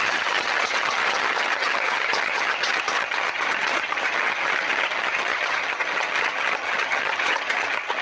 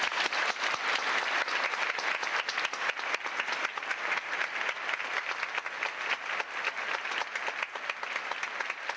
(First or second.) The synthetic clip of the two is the first